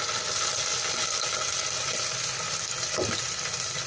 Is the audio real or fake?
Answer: real